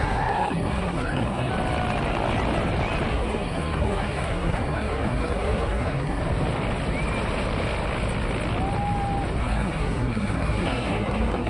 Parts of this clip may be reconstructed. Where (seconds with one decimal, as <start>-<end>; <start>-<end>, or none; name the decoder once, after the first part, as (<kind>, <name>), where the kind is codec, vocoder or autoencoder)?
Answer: 0.0-1.5 (codec, SNAC); 3.1-6.2; 9.4-11.5